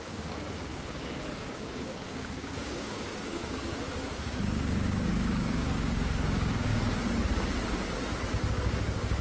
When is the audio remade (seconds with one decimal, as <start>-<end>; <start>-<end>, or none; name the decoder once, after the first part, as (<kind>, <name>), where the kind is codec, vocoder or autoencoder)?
0.0-6.7 (codec, DAC); 8.5-9.2